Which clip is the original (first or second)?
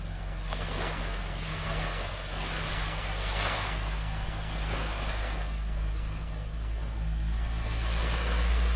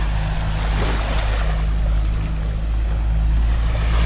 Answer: second